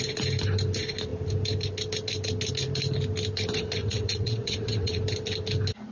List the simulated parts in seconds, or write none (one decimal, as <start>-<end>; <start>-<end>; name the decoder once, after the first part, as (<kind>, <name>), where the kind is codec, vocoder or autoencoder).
3.8-5.0 (vocoder, WaveNeXt)